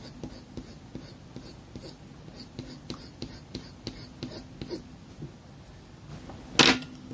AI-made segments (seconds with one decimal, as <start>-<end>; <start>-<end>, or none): none